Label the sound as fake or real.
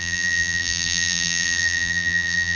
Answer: fake